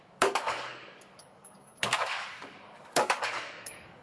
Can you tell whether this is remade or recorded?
remade